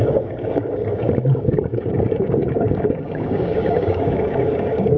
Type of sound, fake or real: fake